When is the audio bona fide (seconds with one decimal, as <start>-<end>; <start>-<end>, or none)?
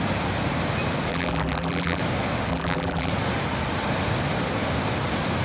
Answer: 0.0-1.1; 2.0-2.5; 3.1-5.4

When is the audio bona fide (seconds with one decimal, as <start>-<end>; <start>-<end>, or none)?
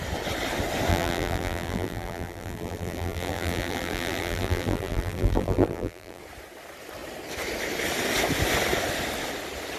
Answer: 0.0-0.9; 6.2-9.8